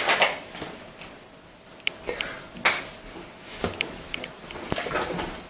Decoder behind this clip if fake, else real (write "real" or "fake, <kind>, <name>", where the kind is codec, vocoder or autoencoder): real